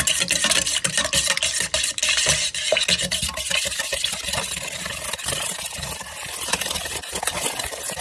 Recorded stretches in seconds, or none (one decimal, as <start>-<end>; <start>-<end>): 0.0-8.0